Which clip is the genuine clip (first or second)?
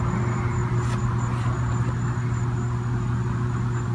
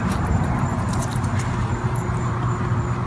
first